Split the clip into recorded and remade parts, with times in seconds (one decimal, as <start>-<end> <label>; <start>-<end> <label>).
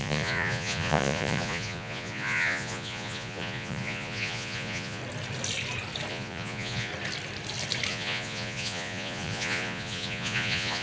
0.0-5.0 remade; 5.0-6.1 recorded; 6.1-6.9 remade; 6.9-7.9 recorded; 7.9-10.8 remade